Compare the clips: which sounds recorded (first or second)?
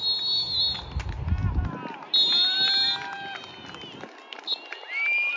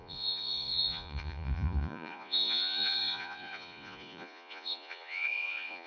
first